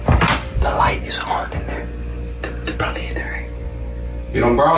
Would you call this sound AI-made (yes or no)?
no